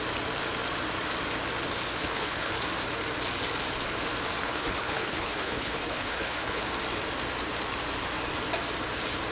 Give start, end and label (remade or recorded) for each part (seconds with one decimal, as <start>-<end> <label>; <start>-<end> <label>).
0.0-2.0 recorded; 2.0-2.5 remade; 2.5-4.4 recorded; 4.4-6.6 remade; 6.6-9.3 recorded